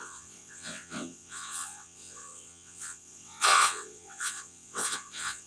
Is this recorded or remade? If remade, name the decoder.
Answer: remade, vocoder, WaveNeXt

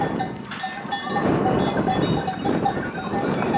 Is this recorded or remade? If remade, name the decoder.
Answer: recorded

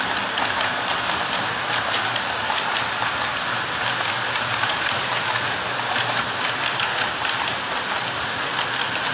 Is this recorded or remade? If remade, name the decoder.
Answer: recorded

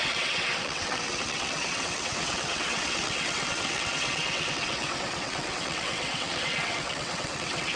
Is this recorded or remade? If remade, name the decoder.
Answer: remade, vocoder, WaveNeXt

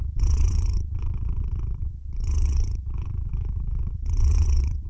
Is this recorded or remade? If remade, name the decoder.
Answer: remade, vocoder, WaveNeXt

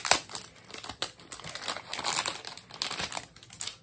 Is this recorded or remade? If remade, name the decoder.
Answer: recorded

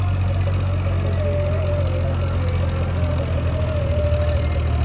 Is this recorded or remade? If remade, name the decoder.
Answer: recorded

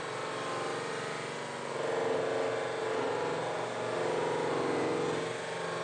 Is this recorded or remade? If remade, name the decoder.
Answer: recorded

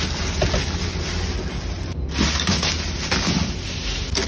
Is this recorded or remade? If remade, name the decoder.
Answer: recorded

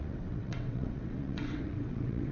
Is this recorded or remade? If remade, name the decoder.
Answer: remade, vocoder, WaveNeXt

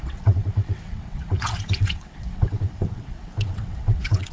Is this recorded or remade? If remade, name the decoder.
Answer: remade, vocoder, WaveNeXt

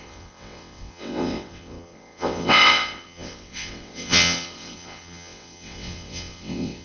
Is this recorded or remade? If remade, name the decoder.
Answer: remade, vocoder, WaveNeXt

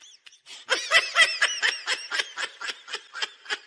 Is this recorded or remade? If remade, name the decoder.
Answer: recorded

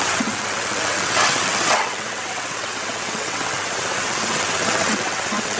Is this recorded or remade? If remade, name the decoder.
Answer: remade, vocoder, WaveNeXt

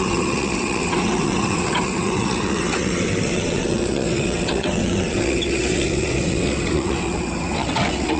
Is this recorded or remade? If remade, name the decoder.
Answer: remade, vocoder, WaveNeXt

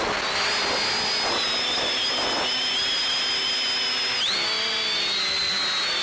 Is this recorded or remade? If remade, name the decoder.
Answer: recorded